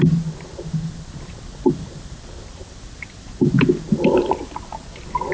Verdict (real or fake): real